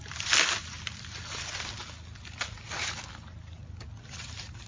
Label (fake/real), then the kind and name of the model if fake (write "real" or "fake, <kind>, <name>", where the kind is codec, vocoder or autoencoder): real